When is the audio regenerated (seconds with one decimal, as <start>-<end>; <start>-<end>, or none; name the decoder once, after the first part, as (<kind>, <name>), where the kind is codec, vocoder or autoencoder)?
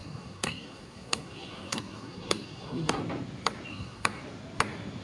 0.0-3.0 (codec, SNAC); 3.7-4.2